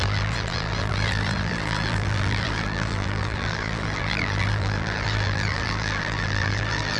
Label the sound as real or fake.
fake